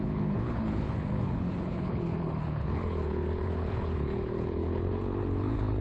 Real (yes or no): no